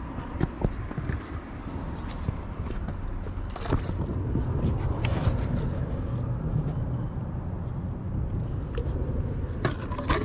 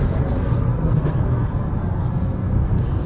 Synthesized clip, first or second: second